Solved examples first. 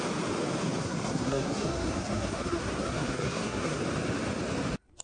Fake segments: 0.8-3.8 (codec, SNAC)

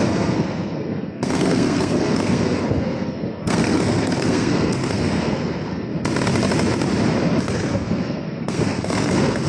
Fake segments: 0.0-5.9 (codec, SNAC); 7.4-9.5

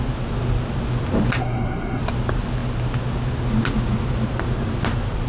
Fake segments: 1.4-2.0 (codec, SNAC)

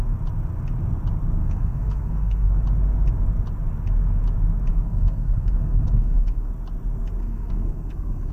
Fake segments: 1.4-2.5 (codec, SNAC); 4.7-6.5; 7.2-8.3

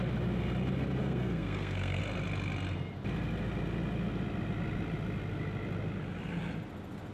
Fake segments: 1.0-2.0 (codec, SNAC)